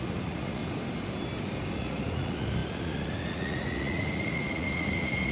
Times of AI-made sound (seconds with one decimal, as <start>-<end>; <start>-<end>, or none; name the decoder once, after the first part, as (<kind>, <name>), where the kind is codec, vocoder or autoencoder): 0.0-0.6 (vocoder, Vocos); 1.7-5.3